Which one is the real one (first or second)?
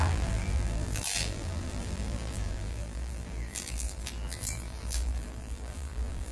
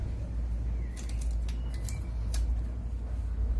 second